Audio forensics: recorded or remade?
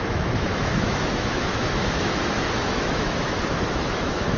remade